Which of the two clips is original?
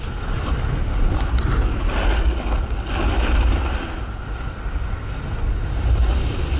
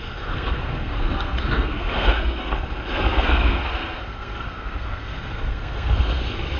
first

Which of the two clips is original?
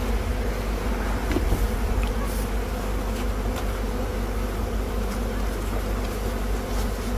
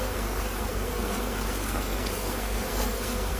first